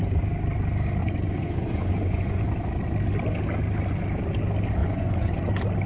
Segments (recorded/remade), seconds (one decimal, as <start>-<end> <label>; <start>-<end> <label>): 0.0-1.0 recorded; 1.0-2.4 remade; 2.4-4.8 recorded; 4.8-5.5 remade; 5.5-5.9 recorded